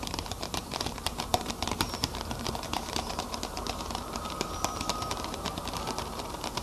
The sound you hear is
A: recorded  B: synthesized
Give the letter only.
B